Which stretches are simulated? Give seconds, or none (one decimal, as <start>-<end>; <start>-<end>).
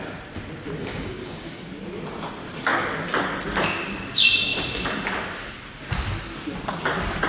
0.8-1.7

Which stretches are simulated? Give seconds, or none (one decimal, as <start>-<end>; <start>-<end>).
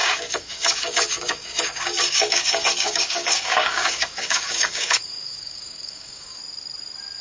0.0-6.4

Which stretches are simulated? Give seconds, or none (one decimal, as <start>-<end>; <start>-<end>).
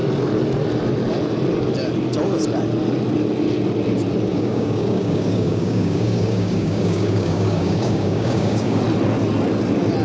4.3-8.8